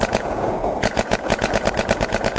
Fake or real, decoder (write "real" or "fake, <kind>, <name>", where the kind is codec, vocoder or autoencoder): fake, vocoder, Vocos